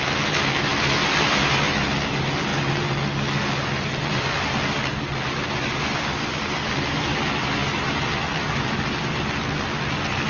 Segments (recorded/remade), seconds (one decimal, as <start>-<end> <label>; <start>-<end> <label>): 0.0-10.3 recorded